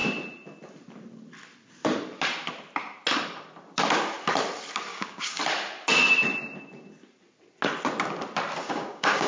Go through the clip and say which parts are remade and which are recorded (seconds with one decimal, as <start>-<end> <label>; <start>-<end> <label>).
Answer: 0.0-4.9 recorded; 4.9-5.4 remade; 5.4-8.6 recorded; 8.6-9.3 remade